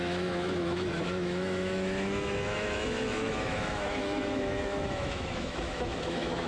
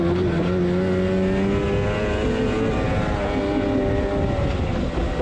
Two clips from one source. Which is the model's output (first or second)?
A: first